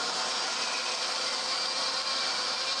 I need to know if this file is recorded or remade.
recorded